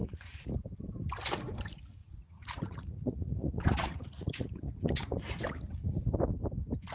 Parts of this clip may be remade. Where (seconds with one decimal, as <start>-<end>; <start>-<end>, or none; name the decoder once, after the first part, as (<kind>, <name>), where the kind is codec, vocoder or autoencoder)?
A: 0.0-0.5 (vocoder, Vocos); 2.0-5.2